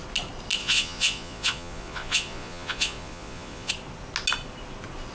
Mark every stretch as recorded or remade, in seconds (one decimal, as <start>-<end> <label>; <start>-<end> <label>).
0.0-0.6 recorded; 0.6-3.7 remade; 3.7-5.1 recorded